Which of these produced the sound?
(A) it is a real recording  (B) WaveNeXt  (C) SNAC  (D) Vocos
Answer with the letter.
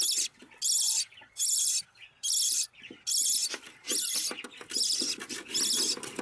A